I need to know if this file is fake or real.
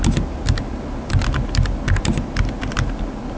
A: real